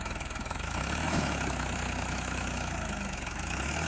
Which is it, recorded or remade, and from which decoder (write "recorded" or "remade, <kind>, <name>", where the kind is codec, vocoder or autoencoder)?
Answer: remade, autoencoder, DAC-VAE